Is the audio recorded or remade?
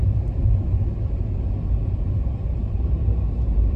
remade